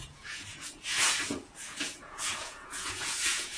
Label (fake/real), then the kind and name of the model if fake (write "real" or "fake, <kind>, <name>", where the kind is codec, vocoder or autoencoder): fake, vocoder, Vocos